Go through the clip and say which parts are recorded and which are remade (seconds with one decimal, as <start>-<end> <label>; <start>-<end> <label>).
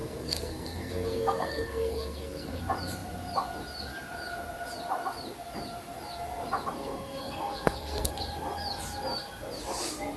0.0-2.6 remade; 2.6-6.8 recorded; 6.8-8.1 remade; 8.1-10.2 recorded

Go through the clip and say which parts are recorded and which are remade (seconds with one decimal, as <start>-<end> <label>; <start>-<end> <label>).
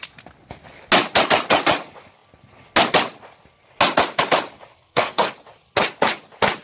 0.0-4.7 recorded; 4.7-5.3 remade; 5.3-6.6 recorded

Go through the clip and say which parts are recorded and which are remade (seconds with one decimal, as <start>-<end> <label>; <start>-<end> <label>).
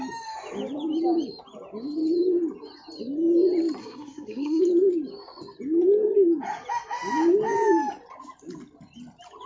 0.0-3.8 recorded; 3.8-4.6 remade; 4.6-9.5 recorded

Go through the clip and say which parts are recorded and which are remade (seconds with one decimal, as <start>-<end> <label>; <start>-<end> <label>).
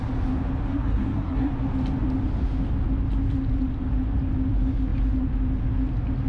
0.0-0.7 recorded; 0.7-1.5 remade; 1.5-6.3 recorded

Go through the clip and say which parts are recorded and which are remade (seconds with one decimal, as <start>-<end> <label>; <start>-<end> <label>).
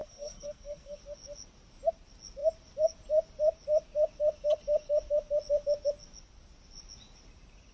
0.0-1.0 remade; 1.0-7.7 recorded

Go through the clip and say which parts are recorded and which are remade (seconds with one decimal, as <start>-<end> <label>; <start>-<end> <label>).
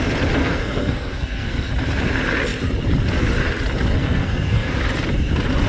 0.0-0.4 recorded; 0.4-1.7 remade; 1.7-4.0 recorded; 4.0-4.7 remade; 4.7-5.7 recorded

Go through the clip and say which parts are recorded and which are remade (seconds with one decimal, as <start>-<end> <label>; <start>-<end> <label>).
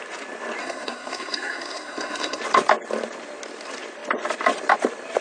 0.0-0.6 recorded; 0.6-2.4 remade; 2.4-5.2 recorded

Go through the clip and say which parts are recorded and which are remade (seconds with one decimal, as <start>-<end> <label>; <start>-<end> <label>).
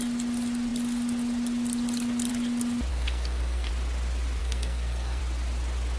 0.0-2.9 recorded; 2.9-3.7 remade; 3.7-4.4 recorded; 4.4-5.2 remade; 5.2-6.0 recorded